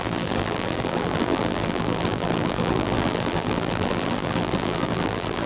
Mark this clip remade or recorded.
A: remade